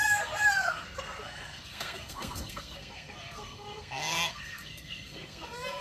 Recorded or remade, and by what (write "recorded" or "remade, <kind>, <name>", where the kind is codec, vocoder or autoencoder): remade, codec, SNAC